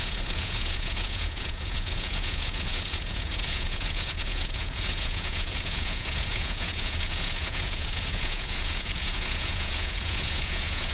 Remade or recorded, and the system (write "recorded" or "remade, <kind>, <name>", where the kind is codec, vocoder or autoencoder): remade, vocoder, Vocos